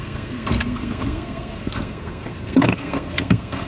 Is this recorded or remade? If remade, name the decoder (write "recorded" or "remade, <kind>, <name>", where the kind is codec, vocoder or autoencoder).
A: remade, codec, SNAC